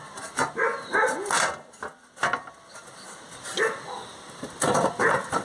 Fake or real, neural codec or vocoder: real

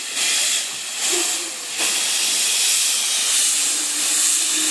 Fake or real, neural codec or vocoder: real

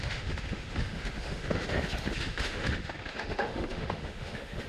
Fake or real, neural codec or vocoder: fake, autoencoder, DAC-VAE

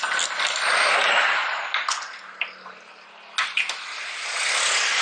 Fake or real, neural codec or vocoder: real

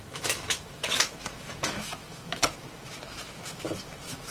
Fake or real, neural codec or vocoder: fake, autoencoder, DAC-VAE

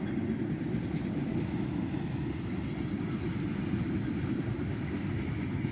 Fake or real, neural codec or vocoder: real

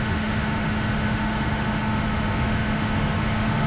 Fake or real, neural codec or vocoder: fake, autoencoder, DAC-VAE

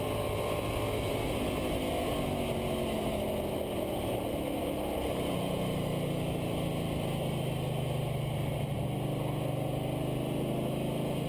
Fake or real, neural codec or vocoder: real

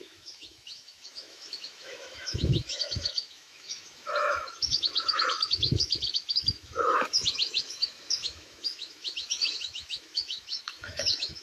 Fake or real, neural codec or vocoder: fake, autoencoder, DAC-VAE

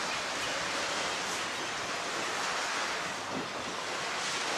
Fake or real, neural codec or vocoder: real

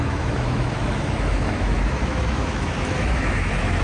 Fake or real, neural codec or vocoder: fake, autoencoder, DAC-VAE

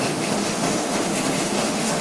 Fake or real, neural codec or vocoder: fake, autoencoder, DAC-VAE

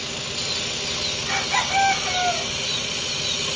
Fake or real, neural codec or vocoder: real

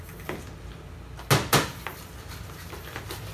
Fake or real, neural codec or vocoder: real